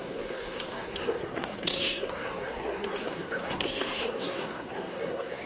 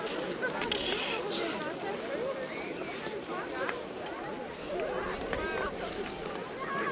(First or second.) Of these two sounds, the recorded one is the second